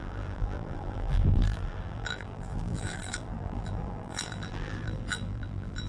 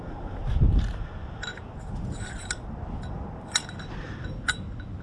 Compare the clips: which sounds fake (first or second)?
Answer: first